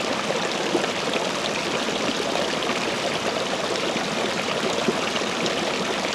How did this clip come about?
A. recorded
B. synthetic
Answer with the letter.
A